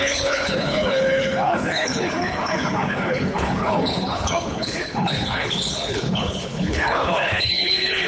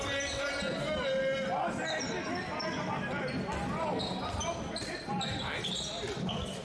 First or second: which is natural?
second